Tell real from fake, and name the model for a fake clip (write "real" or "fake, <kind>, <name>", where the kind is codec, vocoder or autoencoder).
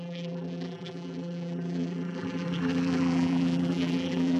fake, vocoder, BigVGAN v2